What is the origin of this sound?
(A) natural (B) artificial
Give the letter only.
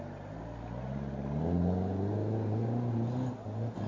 A